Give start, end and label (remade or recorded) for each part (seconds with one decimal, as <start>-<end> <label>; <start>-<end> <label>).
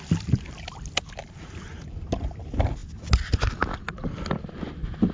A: 0.0-5.1 recorded